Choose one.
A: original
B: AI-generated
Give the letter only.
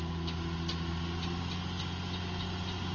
A